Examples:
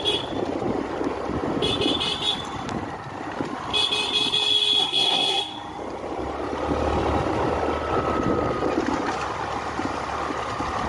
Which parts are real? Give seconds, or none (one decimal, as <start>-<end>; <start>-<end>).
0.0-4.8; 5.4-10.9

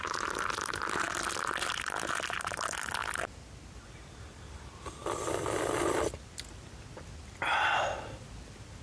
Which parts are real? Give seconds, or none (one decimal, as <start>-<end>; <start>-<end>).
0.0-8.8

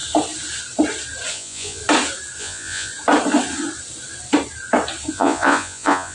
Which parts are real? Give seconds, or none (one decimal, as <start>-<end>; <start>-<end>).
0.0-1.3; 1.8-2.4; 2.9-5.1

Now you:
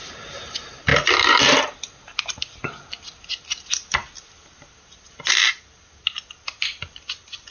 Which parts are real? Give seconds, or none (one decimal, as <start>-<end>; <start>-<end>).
0.0-7.5

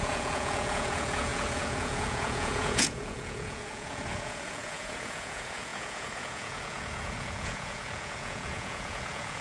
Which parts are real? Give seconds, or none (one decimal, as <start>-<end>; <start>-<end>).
none

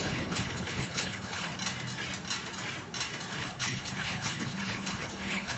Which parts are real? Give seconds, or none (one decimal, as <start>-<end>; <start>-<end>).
1.5-3.3

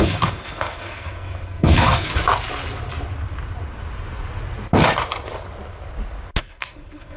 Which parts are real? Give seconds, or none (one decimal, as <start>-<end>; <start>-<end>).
2.1-6.4